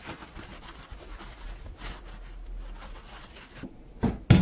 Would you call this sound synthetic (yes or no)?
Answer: no